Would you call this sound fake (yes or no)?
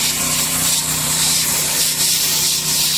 yes